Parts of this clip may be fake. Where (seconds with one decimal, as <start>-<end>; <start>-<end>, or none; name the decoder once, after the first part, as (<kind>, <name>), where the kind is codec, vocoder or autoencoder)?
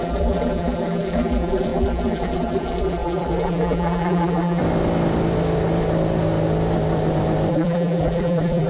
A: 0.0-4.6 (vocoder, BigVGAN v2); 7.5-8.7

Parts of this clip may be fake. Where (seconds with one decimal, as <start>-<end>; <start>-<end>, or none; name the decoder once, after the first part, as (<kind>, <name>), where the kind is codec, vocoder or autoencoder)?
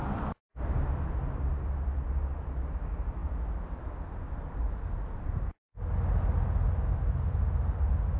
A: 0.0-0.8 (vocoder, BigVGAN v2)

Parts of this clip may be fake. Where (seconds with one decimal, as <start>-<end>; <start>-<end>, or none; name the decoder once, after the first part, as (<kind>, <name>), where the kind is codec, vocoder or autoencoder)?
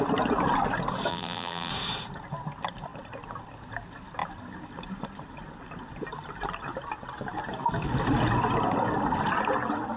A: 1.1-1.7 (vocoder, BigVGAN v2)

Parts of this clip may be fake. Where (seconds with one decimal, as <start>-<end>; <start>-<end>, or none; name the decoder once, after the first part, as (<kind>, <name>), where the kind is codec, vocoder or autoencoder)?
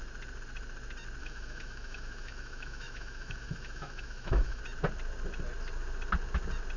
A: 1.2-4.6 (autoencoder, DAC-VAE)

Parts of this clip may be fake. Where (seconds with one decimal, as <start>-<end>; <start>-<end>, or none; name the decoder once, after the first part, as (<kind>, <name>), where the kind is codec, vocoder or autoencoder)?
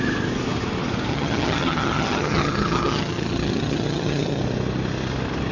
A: 1.1-4.4 (vocoder, HiFi-GAN)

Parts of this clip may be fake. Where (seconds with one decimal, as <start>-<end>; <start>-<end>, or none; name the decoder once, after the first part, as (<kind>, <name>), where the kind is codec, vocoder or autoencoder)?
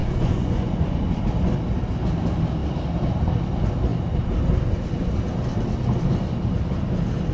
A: 0.0-1.1 (vocoder, Vocos)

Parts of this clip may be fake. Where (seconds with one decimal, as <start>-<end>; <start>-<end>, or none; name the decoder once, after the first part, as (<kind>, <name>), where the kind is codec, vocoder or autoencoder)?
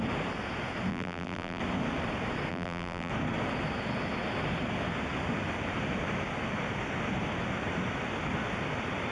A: 0.9-1.6 (vocoder, BigVGAN v2); 2.5-3.1